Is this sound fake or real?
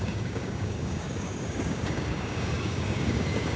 fake